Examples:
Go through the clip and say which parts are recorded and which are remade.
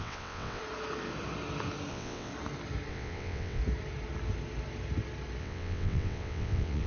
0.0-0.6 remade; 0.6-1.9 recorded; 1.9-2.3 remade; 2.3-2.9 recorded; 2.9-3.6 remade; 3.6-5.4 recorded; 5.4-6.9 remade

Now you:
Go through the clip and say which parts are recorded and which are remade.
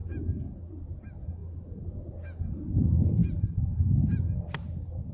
0.0-5.1 recorded